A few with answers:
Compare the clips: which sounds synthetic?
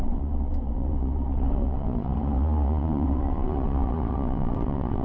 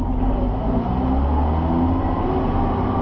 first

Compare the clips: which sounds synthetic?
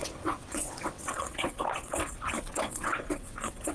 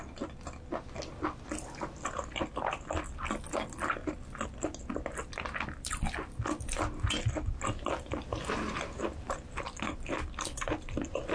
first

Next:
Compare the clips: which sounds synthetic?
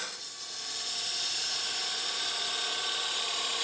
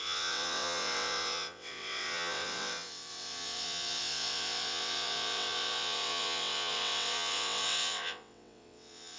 second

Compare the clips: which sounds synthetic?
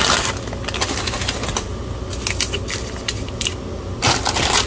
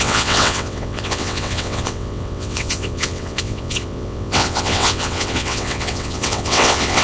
second